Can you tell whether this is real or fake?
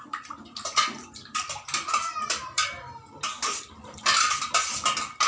real